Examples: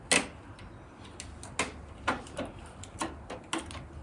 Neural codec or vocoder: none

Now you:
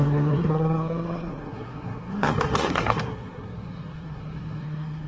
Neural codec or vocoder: codec, SNAC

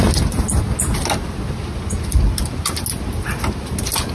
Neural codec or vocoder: none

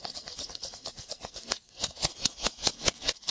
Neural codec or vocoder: codec, SNAC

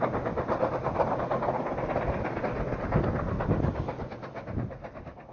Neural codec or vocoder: none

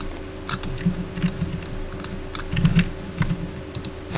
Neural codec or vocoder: none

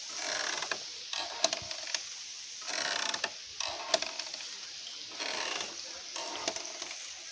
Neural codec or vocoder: none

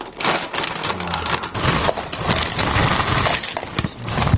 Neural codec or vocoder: none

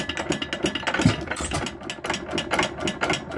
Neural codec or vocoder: none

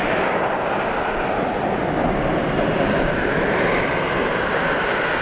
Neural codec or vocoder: none